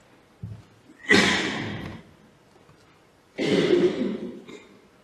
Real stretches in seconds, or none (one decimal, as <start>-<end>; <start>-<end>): 0.0-5.0